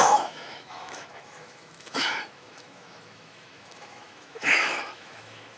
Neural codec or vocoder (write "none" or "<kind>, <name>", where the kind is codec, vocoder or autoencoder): autoencoder, DAC-VAE